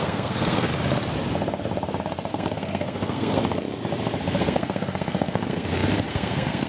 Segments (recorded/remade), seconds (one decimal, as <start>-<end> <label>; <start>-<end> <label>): 0.0-0.7 remade; 0.7-2.3 recorded; 2.3-3.4 remade; 3.4-4.4 recorded; 4.4-6.7 remade